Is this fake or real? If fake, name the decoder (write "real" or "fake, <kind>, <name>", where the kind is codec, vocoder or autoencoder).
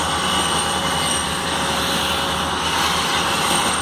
real